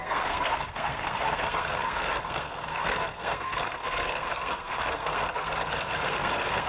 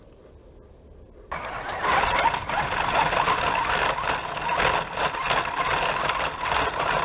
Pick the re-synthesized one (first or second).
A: first